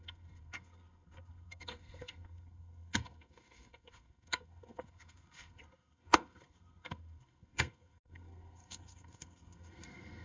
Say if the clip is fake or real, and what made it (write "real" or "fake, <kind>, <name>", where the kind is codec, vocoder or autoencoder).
fake, codec, SNAC